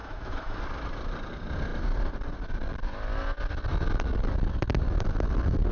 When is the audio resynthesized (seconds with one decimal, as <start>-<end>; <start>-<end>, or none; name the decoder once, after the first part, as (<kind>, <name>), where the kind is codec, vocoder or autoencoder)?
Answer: 0.0-0.6 (autoencoder, DAC-VAE)